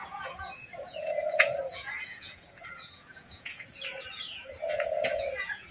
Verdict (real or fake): fake